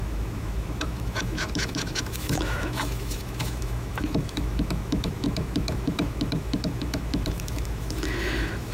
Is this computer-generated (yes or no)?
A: yes